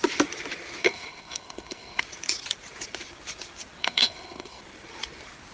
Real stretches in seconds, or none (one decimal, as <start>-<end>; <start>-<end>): 0.0-0.8; 2.0-3.8; 4.6-5.5

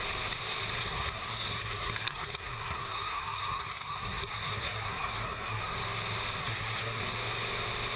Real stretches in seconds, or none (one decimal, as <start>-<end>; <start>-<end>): 0.0-0.8; 5.6-6.4; 7.0-8.0

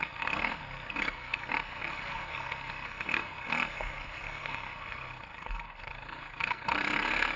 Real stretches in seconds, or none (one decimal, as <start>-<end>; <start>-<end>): none

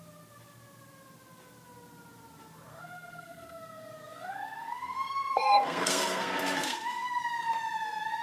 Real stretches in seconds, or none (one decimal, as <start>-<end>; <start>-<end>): 0.0-2.7; 7.2-8.2